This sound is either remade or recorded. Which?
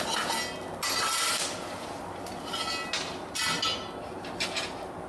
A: recorded